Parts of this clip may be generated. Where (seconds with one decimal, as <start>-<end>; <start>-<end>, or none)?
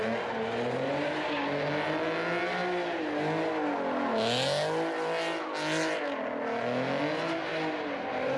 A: none